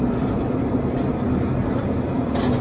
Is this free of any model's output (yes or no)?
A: no